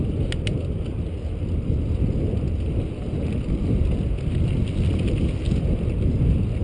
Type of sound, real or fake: real